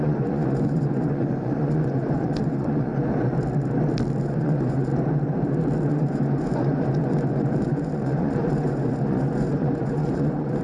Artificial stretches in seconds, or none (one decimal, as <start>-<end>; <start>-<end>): 0.0-2.9; 4.2-4.9; 5.9-10.6